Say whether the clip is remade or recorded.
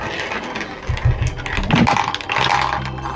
recorded